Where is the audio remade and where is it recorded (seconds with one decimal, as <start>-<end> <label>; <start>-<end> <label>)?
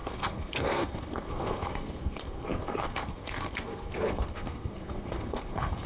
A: 0.0-5.9 remade